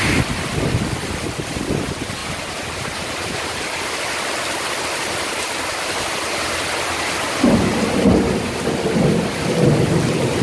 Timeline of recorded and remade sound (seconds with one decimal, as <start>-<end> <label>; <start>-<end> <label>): 0.0-2.2 recorded; 2.2-3.9 remade; 3.9-7.7 recorded; 7.7-8.2 remade; 8.2-10.4 recorded